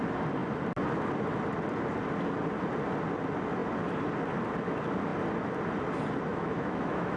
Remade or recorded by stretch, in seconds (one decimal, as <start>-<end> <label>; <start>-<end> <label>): 0.0-6.3 recorded; 6.3-7.2 remade